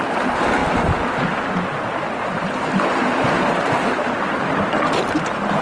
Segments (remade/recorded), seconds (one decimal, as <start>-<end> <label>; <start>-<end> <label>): 0.0-5.6 recorded